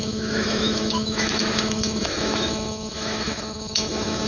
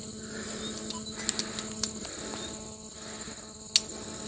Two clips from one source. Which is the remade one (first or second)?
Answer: first